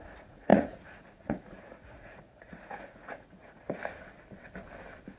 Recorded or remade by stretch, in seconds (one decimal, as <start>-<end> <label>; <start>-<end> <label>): 0.0-3.8 remade; 3.8-5.2 recorded